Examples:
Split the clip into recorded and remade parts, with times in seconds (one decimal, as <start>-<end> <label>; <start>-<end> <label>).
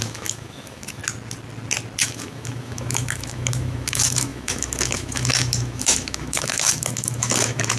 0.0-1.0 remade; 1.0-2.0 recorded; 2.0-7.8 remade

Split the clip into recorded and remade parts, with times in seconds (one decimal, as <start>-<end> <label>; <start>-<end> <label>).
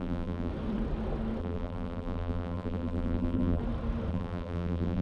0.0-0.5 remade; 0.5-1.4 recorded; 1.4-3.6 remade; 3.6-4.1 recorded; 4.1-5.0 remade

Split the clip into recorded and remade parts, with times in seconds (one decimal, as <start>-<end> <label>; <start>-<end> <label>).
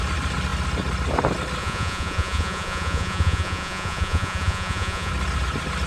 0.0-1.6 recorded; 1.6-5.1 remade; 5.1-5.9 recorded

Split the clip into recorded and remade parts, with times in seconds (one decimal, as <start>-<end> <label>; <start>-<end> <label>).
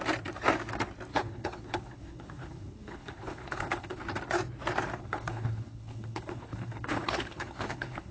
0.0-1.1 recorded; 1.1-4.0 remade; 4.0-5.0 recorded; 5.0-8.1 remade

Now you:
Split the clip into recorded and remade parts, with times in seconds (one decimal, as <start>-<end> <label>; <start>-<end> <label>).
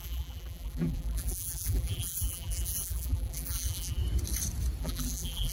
0.0-4.0 remade; 4.0-4.8 recorded; 4.8-5.5 remade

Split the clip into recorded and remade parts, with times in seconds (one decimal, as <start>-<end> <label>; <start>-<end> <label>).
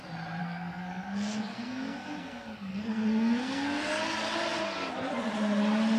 0.0-0.4 recorded; 0.4-4.0 remade; 4.0-6.0 recorded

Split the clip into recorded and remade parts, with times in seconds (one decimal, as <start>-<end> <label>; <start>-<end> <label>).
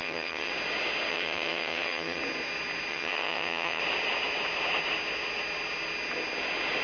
0.0-0.5 remade; 0.5-1.1 recorded; 1.1-2.2 remade; 2.2-2.9 recorded; 2.9-3.8 remade; 3.8-6.8 recorded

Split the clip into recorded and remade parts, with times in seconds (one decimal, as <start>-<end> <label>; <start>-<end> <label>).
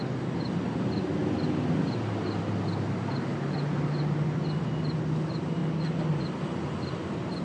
0.0-7.4 recorded